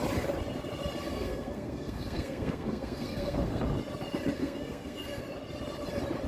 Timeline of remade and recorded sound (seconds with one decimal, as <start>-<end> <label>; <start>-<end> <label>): 0.0-1.1 recorded; 1.1-3.6 remade; 3.6-4.4 recorded; 4.4-5.2 remade; 5.2-6.3 recorded